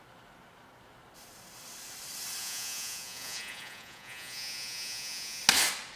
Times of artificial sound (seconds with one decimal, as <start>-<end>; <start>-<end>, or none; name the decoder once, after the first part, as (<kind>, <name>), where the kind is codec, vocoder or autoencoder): 2.4-5.4 (vocoder, Vocos)